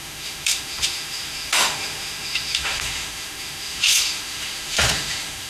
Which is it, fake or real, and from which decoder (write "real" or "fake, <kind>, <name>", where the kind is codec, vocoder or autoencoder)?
fake, autoencoder, DAC-VAE